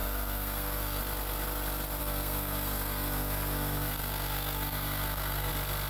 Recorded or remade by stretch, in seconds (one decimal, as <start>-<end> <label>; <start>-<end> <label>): 0.0-1.0 remade; 1.0-2.0 recorded; 2.0-5.5 remade; 5.5-5.9 recorded